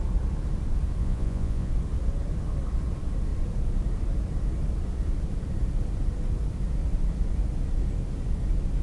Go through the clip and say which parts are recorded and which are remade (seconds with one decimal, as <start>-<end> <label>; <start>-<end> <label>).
0.0-1.0 recorded; 1.0-1.7 remade; 1.7-8.8 recorded